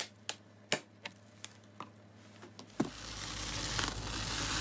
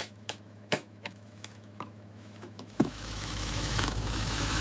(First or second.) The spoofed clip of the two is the second